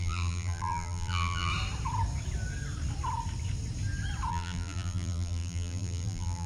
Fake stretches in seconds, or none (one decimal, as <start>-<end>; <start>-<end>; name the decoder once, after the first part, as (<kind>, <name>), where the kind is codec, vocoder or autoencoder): 0.0-1.5 (vocoder, BigVGAN v2); 4.3-6.5